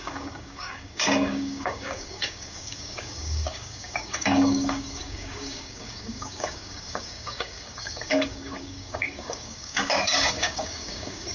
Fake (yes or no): yes